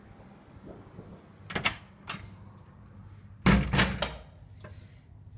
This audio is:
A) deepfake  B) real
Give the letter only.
B